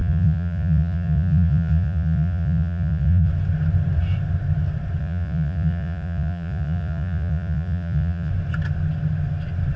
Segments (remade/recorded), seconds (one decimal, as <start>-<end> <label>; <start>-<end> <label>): 0.0-3.3 remade; 3.3-5.0 recorded; 5.0-8.3 remade; 8.3-9.8 recorded